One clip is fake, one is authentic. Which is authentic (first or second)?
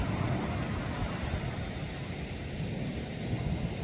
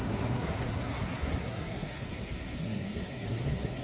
first